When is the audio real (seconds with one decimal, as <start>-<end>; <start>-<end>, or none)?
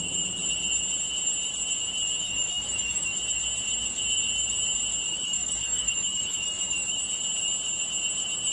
0.0-2.2; 3.2-5.1; 7.0-8.5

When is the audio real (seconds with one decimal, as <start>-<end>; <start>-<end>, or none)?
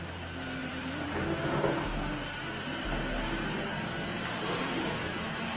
0.0-0.6; 1.2-4.1; 4.9-5.6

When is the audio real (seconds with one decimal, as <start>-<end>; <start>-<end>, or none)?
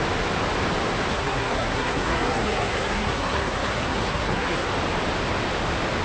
0.0-1.1; 4.7-6.0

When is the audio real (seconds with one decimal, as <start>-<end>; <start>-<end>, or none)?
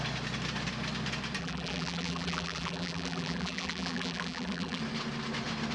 0.0-1.4; 4.8-5.7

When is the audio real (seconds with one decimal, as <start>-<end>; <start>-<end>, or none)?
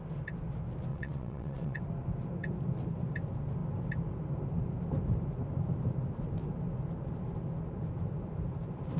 0.0-0.9; 1.8-9.0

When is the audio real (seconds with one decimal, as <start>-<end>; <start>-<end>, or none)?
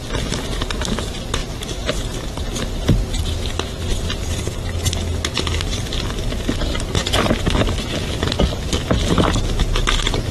0.0-10.3